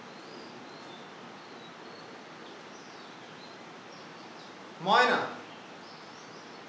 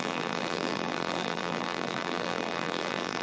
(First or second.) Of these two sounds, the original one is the first